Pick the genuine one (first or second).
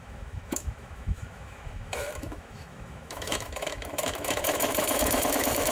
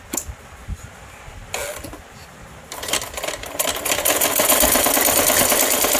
second